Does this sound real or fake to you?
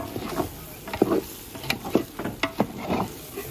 real